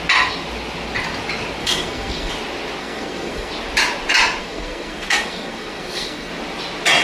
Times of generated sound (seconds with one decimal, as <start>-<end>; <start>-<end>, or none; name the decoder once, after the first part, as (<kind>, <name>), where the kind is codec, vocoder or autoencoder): 1.6-2.3 (codec, SNAC); 2.8-3.5; 4.4-6.3